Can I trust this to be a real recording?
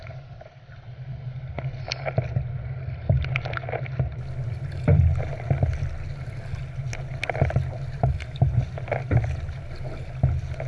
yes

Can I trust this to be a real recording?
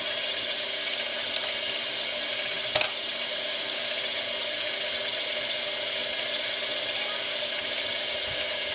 yes